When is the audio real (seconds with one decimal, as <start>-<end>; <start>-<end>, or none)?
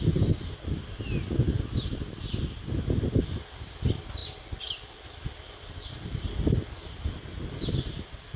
0.0-8.4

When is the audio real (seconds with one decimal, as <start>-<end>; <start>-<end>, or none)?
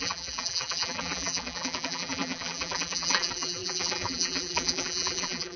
none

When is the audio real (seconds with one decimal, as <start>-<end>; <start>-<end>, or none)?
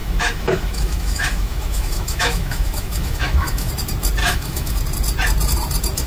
3.7-4.2; 4.8-6.1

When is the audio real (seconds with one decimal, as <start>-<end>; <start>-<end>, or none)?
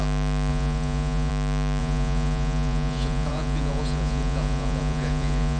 0.0-0.5; 1.3-1.8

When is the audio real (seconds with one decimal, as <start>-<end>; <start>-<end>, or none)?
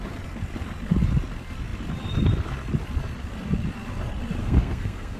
0.0-4.4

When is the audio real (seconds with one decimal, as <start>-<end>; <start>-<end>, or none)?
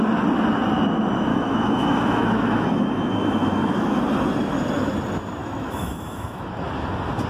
0.0-1.3; 4.0-5.4; 6.5-7.3